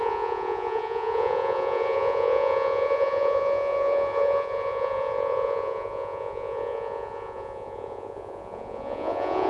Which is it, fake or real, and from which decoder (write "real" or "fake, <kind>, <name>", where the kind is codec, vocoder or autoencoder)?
fake, vocoder, Vocos